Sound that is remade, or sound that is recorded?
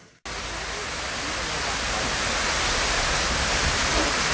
recorded